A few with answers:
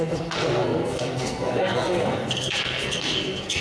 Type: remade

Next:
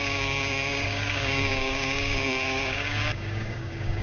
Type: remade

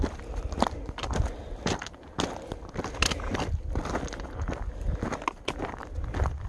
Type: recorded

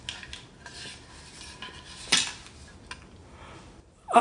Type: recorded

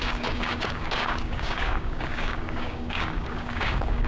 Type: remade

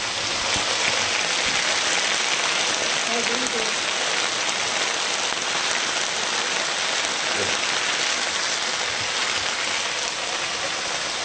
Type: recorded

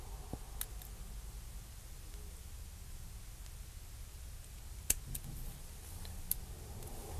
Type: recorded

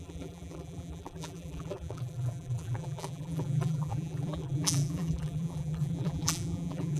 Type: remade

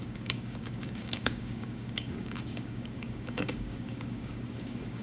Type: remade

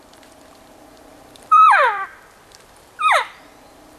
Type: remade